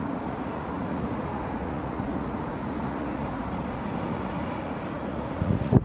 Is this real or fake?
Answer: fake